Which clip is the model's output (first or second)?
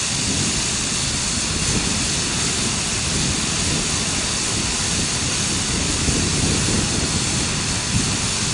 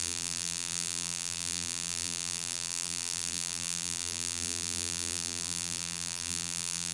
second